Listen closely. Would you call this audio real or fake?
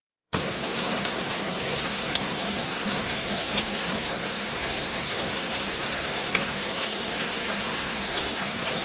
fake